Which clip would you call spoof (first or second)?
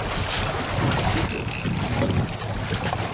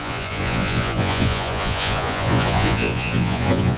second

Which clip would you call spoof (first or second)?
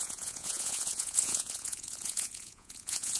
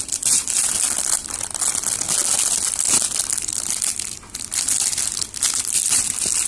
first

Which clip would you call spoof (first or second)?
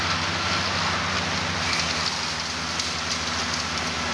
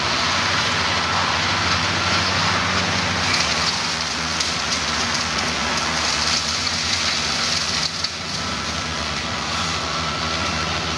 second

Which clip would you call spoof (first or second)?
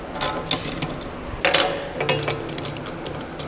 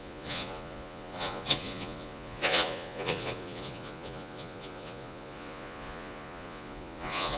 second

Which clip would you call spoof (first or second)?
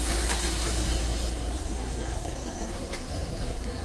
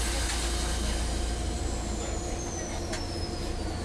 first